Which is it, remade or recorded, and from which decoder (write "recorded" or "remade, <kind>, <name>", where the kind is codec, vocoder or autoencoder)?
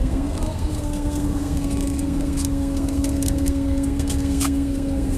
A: remade, codec, SNAC